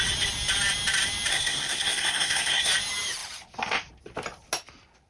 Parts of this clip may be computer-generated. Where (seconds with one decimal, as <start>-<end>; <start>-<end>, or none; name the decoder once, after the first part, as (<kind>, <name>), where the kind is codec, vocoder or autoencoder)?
1.3-2.7 (codec, SNAC)